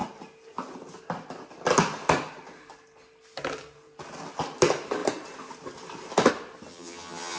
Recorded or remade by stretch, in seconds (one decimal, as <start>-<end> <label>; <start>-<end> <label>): 0.0-6.7 recorded; 6.7-7.4 remade